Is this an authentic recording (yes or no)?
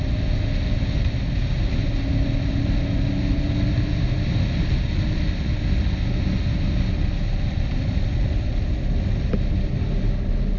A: yes